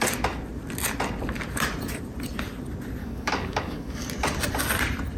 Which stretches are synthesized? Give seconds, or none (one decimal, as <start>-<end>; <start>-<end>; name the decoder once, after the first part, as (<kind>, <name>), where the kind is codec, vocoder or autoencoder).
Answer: 3.0-4.1 (codec, DAC)